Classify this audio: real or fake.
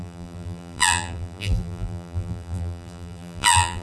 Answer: fake